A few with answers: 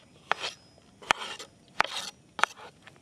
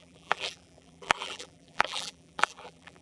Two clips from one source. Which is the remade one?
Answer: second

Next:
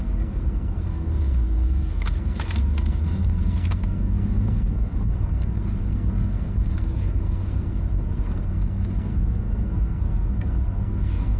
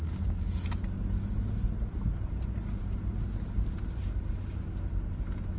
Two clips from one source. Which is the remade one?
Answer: first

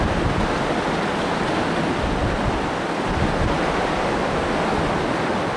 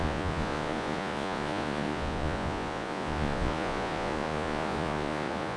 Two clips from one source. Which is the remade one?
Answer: second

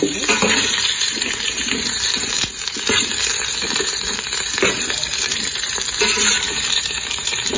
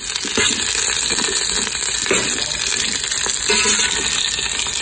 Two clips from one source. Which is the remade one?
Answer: first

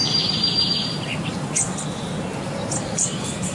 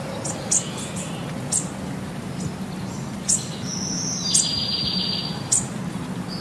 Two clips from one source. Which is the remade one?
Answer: first